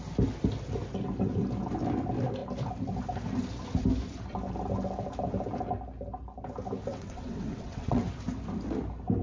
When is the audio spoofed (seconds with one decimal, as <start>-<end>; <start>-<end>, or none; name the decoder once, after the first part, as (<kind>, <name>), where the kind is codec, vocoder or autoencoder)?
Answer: 6.9-8.0 (vocoder, WaveNeXt)